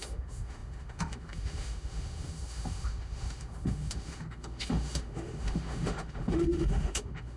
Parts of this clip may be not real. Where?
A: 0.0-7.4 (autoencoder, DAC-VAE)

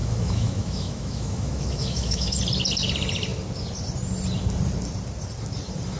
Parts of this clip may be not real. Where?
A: 0.0-2.4 (autoencoder, DAC-VAE)

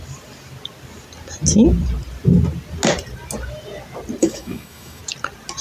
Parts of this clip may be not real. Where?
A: 4.2-5.0 (autoencoder, DAC-VAE)